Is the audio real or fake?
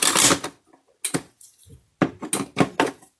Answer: real